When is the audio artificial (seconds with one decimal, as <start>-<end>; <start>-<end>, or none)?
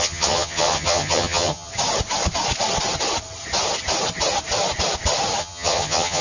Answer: 0.0-1.7; 5.4-6.2